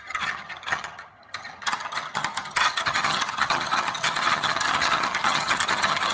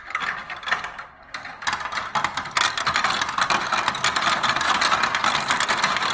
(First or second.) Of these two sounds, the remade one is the first